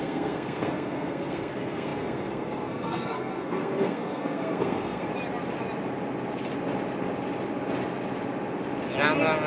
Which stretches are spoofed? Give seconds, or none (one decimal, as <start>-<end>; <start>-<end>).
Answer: 0.0-5.1